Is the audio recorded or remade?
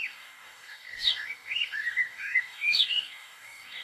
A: remade